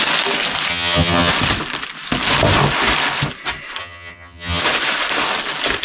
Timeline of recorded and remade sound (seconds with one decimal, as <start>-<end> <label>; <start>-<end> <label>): 0.0-0.7 recorded; 0.7-1.3 remade; 1.3-3.8 recorded; 3.8-4.6 remade; 4.6-5.8 recorded